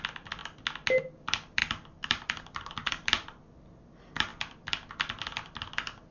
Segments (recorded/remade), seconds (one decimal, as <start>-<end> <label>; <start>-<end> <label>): 0.0-1.6 recorded; 1.6-2.9 remade; 2.9-6.1 recorded